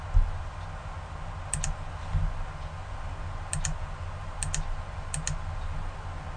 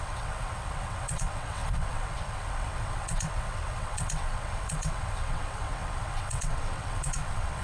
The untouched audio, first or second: first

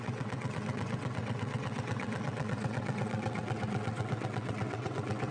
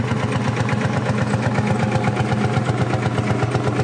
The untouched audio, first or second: second